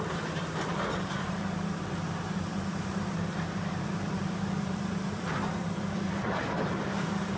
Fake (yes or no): yes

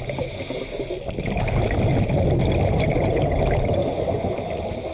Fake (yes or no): no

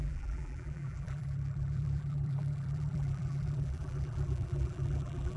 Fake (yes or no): yes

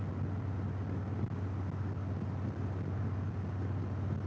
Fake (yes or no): no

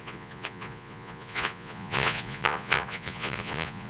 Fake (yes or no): yes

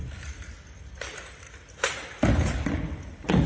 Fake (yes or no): no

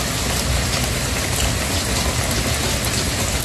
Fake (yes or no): no